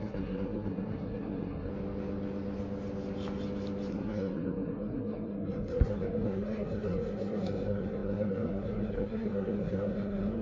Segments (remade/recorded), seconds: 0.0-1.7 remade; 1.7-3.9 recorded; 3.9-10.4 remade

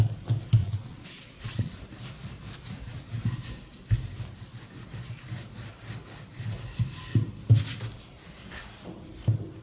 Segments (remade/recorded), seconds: 0.0-0.6 recorded; 0.6-1.7 remade; 1.7-9.6 recorded

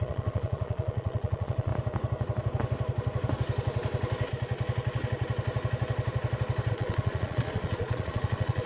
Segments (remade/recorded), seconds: 0.0-1.7 remade; 1.7-6.7 recorded; 6.7-8.7 remade

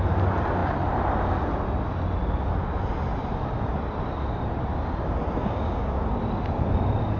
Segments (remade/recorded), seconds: 0.0-5.4 recorded; 5.4-6.0 remade; 6.0-7.2 recorded

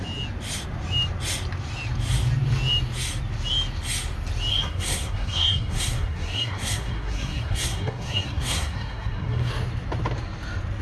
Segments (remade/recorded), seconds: 0.0-4.5 recorded; 4.5-9.5 remade; 9.5-10.8 recorded

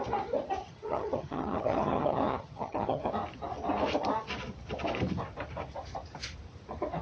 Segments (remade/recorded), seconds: 0.0-0.6 recorded; 0.6-3.1 remade; 3.1-7.0 recorded